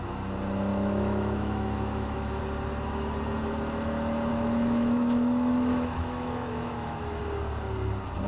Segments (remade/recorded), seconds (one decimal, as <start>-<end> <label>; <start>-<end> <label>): 0.0-0.7 recorded; 0.7-2.4 remade; 2.4-4.3 recorded; 4.3-7.2 remade; 7.2-8.3 recorded